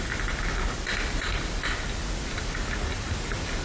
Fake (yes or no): no